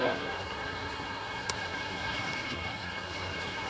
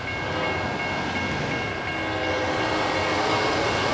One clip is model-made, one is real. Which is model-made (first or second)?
first